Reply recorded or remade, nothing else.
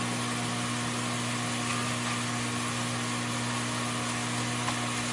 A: recorded